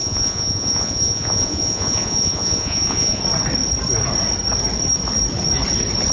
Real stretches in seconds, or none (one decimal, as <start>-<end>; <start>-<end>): 3.2-6.1